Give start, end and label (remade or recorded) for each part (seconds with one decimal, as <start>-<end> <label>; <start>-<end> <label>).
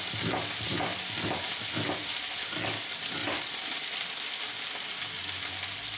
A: 0.0-6.0 recorded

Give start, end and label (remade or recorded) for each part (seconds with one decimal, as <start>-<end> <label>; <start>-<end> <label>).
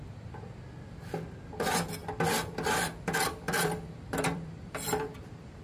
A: 0.0-2.0 recorded; 2.0-5.6 remade